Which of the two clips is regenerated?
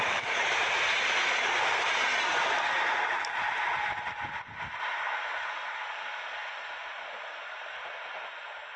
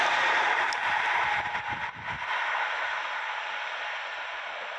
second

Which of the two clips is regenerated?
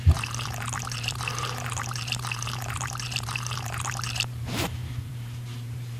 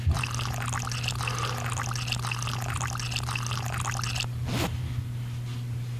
first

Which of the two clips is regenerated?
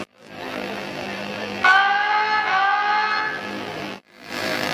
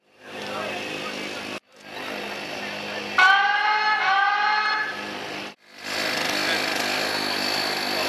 first